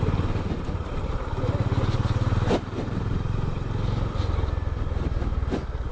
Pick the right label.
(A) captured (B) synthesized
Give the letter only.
B